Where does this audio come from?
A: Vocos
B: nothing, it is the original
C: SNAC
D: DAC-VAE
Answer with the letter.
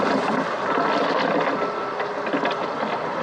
B